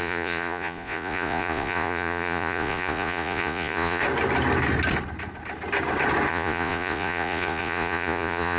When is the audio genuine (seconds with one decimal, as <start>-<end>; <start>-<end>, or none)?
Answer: 4.0-6.3